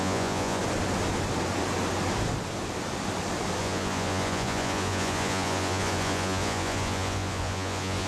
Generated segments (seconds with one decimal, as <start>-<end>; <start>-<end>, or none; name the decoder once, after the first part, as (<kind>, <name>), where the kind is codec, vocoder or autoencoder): 0.0-0.6 (vocoder, Vocos); 3.6-8.1